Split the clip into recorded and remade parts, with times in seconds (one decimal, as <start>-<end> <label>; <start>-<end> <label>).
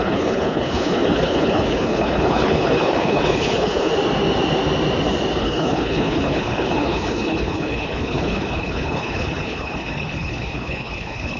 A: 0.0-3.9 remade; 3.9-5.4 recorded; 5.4-11.4 remade